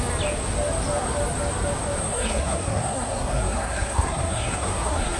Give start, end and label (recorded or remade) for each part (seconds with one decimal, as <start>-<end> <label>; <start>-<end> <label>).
0.0-2.0 recorded; 2.0-5.2 remade